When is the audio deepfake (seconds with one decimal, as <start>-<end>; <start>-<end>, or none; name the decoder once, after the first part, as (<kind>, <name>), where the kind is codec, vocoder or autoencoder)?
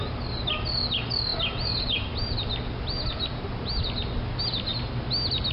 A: none